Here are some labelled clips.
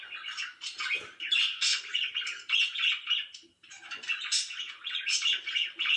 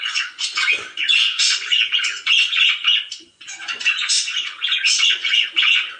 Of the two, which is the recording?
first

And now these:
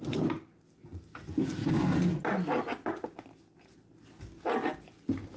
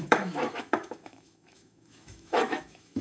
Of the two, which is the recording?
first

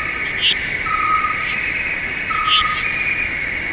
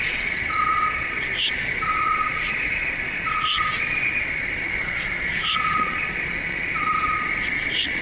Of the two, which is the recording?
first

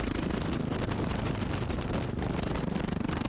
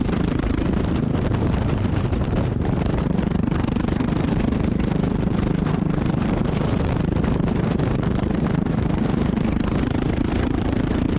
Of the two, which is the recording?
first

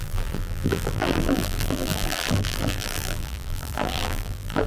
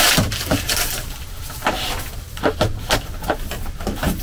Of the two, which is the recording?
second